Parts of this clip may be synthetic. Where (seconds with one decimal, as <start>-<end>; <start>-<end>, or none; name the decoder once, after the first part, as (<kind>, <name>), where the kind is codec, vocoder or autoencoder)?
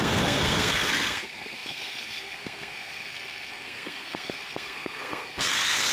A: 0.0-5.9 (codec, SNAC)